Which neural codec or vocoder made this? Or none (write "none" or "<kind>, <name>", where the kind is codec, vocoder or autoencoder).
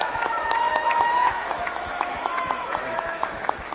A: autoencoder, DAC-VAE